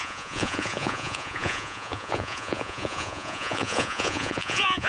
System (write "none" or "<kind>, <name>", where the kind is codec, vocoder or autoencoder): vocoder, Vocos